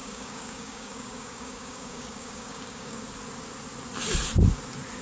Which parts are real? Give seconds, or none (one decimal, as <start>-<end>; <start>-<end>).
3.0-5.0